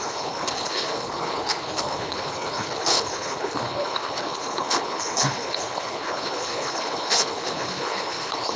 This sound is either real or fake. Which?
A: fake